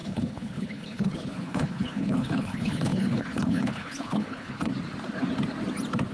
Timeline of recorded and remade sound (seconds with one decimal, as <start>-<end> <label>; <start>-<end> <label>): 0.0-4.7 remade; 4.7-6.1 recorded